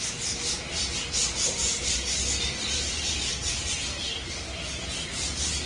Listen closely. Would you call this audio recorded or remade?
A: recorded